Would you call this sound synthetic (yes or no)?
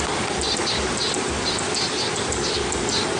no